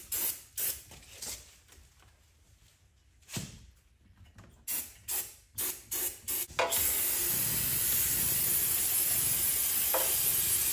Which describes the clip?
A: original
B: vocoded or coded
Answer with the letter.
A